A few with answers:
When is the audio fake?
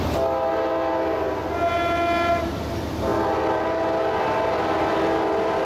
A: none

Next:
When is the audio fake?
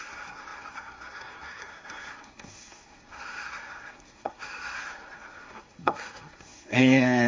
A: 0.0-7.3 (codec, SNAC)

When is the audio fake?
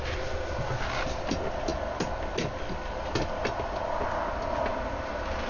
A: none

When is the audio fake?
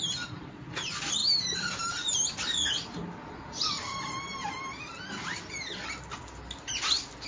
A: none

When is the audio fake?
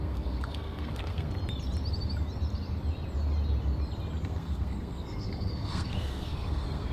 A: 0.0-1.3 (codec, SNAC); 4.2-6.9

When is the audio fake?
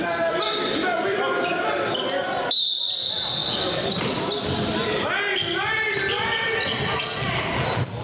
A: none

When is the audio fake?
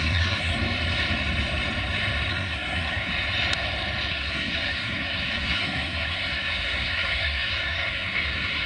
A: 0.0-0.5 (codec, SNAC); 2.3-3.1; 4.1-8.7